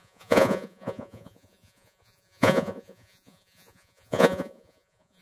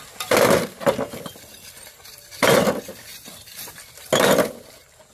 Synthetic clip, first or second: first